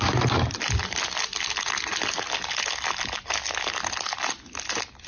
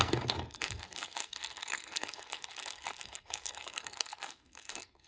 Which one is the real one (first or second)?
first